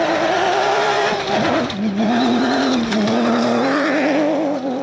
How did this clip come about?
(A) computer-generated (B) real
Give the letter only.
A